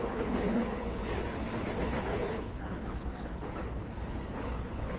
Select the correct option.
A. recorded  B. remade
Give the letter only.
B